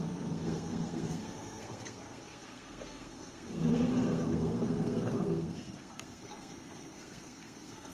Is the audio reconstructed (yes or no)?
yes